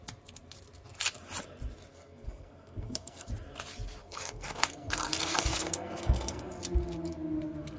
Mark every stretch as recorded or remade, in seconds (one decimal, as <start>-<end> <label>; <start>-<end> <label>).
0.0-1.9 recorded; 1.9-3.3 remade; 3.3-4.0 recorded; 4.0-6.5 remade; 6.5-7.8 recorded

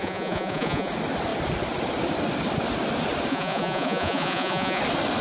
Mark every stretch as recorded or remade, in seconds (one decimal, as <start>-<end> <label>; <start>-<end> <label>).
0.0-0.9 remade; 0.9-3.3 recorded; 3.3-4.8 remade; 4.8-5.2 recorded

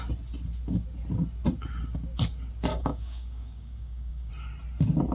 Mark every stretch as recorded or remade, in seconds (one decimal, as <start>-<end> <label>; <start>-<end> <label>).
0.0-2.7 recorded; 2.7-4.3 remade; 4.3-5.1 recorded

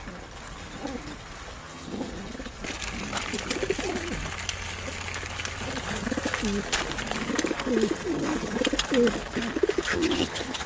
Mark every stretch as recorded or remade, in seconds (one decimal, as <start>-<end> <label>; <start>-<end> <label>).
0.0-1.6 recorded; 1.6-2.1 remade; 2.1-9.9 recorded; 9.9-10.7 remade

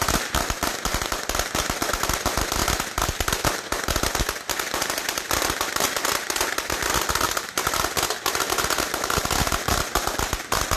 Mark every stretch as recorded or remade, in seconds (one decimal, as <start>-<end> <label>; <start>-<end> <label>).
0.0-10.8 recorded

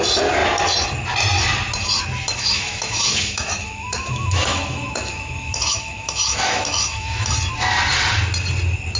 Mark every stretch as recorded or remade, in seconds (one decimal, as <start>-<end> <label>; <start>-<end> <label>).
0.0-2.3 recorded; 2.3-7.3 remade; 7.3-9.0 recorded